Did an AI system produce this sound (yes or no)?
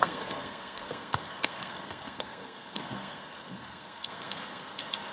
yes